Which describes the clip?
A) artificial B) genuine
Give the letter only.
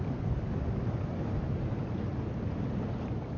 B